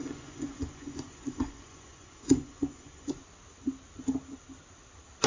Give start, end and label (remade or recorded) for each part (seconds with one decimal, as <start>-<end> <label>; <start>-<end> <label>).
0.0-3.2 remade; 3.2-5.3 recorded